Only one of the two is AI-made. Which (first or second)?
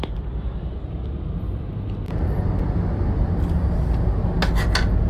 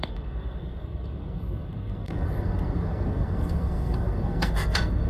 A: second